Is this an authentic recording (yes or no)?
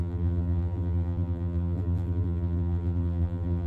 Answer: no